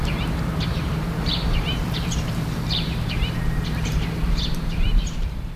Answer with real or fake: fake